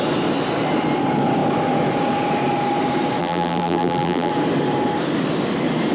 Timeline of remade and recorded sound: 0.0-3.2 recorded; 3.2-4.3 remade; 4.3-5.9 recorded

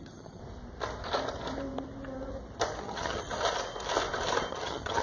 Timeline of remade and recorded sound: 0.0-0.4 remade; 0.4-2.8 recorded; 2.8-3.3 remade; 3.3-4.5 recorded; 4.5-5.0 remade

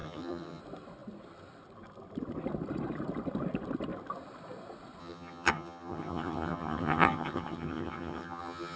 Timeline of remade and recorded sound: 0.0-0.6 remade; 0.6-5.0 recorded; 5.0-8.8 remade